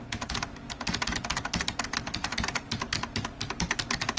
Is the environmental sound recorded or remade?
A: recorded